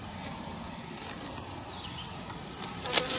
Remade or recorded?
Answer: recorded